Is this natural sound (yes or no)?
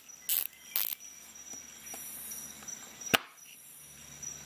yes